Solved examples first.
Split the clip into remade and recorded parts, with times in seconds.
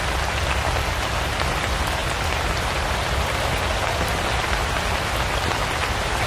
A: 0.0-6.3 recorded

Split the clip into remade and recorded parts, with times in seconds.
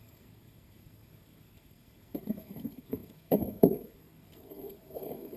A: 0.0-5.4 remade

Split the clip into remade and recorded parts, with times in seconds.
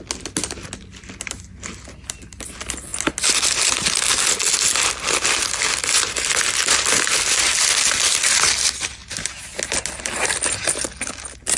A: 0.0-11.6 recorded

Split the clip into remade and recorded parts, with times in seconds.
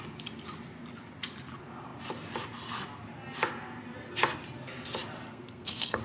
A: 0.0-5.3 recorded; 5.3-6.0 remade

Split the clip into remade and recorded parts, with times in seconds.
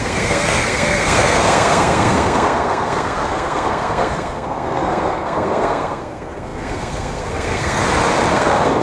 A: 0.0-7.8 remade; 7.8-8.3 recorded; 8.3-8.8 remade